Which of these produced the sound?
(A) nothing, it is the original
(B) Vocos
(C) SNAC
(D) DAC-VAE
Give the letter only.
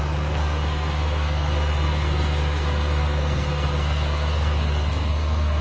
C